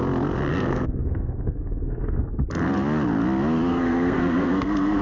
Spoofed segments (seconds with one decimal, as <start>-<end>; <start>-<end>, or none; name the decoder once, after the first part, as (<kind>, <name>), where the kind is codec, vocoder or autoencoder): 0.5-2.4 (codec, SNAC); 3.7-5.0